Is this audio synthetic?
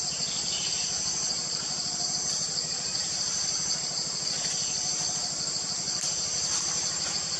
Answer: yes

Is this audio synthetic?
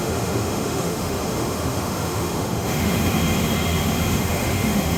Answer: yes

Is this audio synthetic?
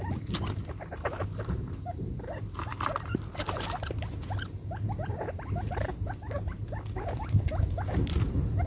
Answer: yes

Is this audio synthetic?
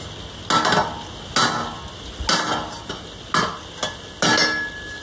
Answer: no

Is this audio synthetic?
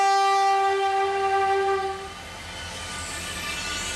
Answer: no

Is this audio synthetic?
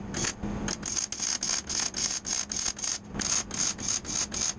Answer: no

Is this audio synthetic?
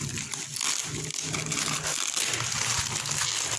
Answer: no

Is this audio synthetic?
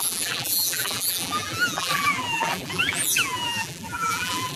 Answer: yes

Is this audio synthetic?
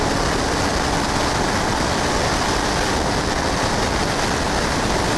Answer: no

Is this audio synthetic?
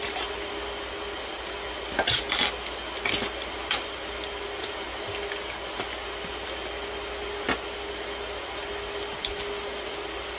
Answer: no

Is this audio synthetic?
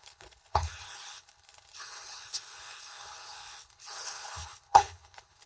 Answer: yes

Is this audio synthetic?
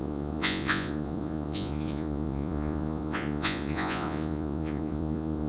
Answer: yes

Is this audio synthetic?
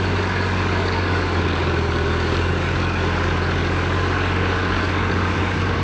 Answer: yes